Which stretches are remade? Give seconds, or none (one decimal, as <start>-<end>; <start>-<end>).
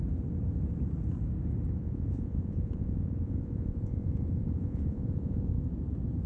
1.8-5.6